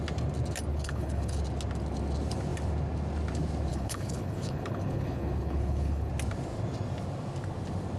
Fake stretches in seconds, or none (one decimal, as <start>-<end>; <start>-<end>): 0.7-1.4; 3.7-6.1

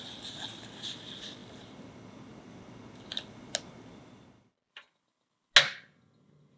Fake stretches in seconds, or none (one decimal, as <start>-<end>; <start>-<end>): none

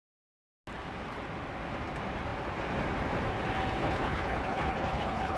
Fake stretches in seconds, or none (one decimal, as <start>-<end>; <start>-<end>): 3.8-5.4

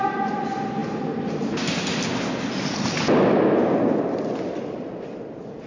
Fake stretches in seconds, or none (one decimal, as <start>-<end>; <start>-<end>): none

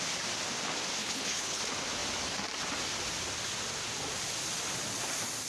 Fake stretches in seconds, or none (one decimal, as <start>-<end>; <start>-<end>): 1.0-1.6